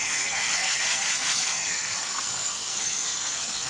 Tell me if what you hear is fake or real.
fake